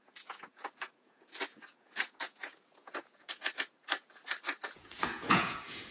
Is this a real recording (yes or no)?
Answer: no